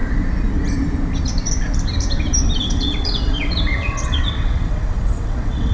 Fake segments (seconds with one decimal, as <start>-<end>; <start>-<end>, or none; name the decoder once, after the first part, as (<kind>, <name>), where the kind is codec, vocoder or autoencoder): 2.6-5.7 (vocoder, WaveNeXt)